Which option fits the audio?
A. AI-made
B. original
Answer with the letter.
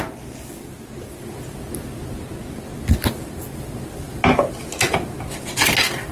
B